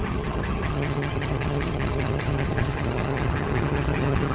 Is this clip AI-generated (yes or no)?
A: yes